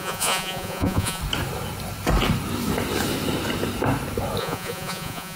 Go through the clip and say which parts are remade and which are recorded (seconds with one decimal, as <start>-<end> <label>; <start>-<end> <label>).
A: 0.0-1.2 remade; 1.2-4.4 recorded; 4.4-5.4 remade